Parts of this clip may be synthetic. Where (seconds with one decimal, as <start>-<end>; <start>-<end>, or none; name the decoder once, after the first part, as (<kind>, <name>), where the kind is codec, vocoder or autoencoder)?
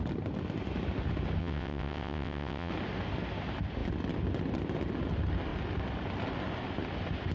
1.4-2.7 (vocoder, WaveNeXt)